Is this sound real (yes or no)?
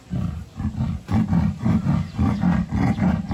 yes